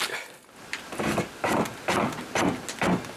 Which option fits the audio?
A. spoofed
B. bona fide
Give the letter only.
B